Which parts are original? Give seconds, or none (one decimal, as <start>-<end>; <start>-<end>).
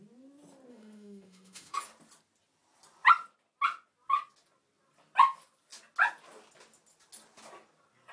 0.0-0.7; 1.8-8.1